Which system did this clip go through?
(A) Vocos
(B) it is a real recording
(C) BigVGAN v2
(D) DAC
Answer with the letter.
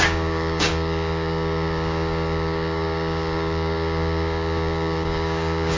D